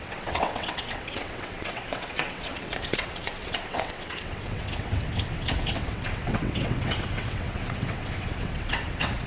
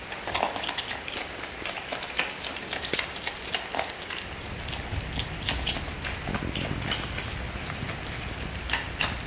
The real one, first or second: second